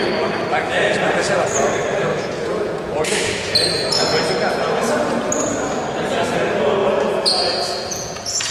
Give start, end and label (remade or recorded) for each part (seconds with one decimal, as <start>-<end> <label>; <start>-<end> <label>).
0.0-2.1 recorded; 2.1-3.5 remade; 3.5-6.8 recorded; 6.8-8.5 remade